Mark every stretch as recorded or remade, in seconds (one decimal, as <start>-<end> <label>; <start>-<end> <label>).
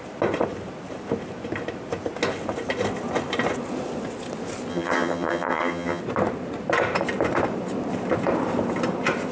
0.0-4.7 recorded; 4.7-6.0 remade; 6.0-9.3 recorded